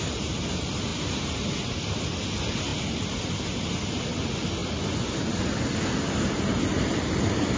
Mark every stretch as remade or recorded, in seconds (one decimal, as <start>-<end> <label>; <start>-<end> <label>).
0.0-7.6 recorded